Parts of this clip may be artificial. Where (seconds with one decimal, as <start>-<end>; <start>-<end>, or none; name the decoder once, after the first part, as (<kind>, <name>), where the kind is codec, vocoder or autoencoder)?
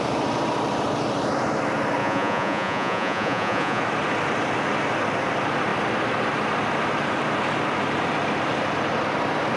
2.0-3.8 (vocoder, Vocos)